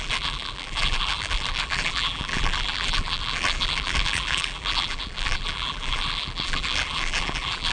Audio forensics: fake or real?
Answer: fake